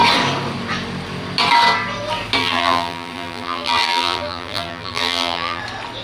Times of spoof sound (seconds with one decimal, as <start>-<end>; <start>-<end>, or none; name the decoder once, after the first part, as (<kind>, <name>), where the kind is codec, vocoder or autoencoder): 2.4-5.6 (vocoder, BigVGAN v2)